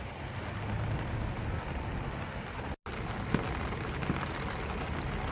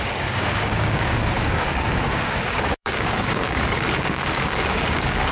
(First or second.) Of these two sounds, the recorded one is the first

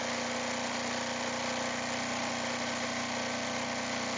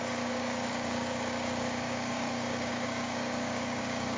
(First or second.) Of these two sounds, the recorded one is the first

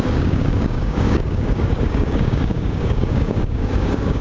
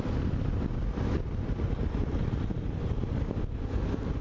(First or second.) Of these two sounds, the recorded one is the second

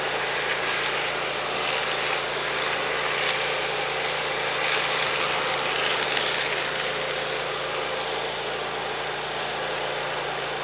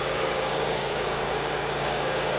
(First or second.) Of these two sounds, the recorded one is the first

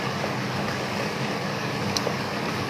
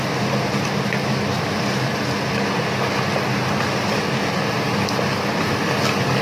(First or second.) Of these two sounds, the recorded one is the second